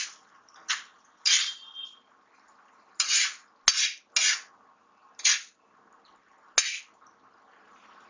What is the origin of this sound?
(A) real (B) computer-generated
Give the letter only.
A